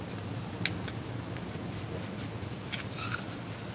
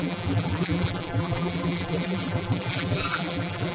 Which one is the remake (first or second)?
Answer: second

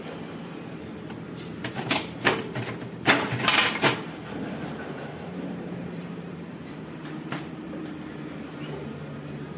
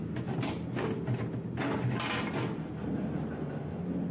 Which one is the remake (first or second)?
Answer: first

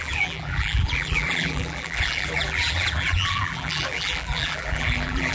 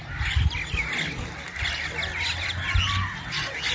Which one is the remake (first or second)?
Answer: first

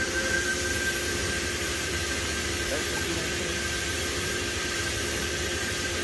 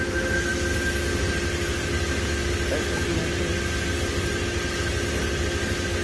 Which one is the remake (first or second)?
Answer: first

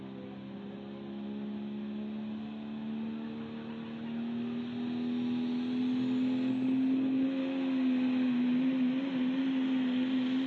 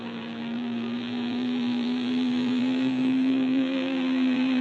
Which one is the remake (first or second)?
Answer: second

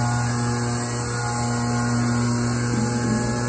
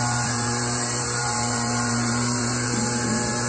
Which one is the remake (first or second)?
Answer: second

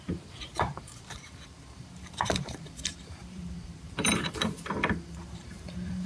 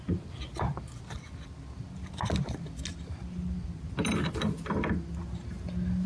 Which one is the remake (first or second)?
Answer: first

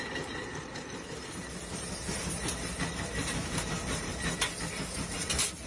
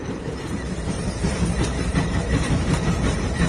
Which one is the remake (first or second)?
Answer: second